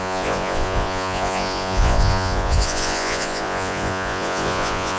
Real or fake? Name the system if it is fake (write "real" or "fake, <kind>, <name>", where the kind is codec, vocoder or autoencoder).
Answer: fake, vocoder, Vocos